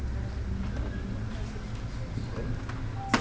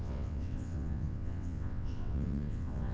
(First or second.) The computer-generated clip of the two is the second